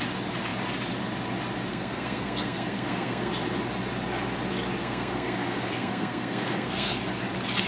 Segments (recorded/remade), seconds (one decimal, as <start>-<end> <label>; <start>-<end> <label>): 0.0-1.7 recorded; 1.7-3.3 remade; 3.3-4.8 recorded; 4.8-7.0 remade; 7.0-7.7 recorded